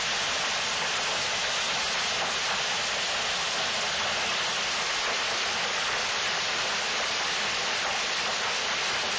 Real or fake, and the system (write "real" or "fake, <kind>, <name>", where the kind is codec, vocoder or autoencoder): real